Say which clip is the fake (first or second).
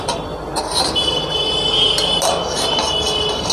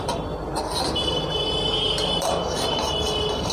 second